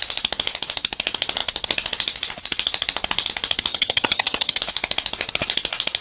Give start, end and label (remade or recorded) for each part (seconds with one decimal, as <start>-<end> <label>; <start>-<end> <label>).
0.0-3.7 recorded; 3.7-4.6 remade; 4.6-6.0 recorded